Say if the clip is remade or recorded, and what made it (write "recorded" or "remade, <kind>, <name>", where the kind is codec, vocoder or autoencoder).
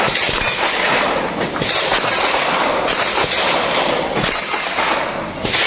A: recorded